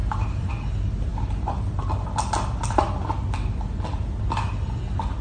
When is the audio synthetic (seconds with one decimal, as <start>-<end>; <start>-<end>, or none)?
0.0-0.5